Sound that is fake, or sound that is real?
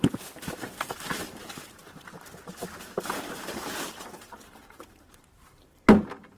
fake